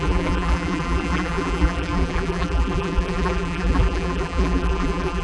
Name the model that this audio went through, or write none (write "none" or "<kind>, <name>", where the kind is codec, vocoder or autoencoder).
vocoder, BigVGAN v2